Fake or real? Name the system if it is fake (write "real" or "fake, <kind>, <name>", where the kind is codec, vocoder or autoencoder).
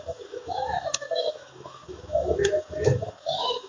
fake, autoencoder, DAC-VAE